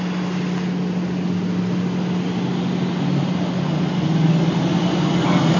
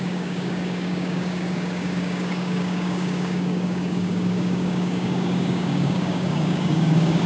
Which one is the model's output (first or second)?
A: second